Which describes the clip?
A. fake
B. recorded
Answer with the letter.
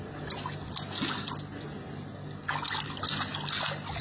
B